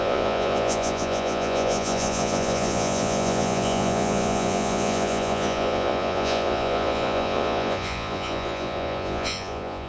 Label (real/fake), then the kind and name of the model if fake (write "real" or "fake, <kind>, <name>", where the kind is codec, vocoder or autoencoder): fake, vocoder, Vocos